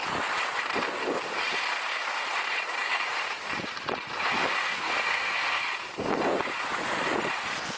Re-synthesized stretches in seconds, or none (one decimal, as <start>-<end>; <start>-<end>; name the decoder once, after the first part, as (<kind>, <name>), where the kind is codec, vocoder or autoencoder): 4.6-5.6 (codec, SNAC)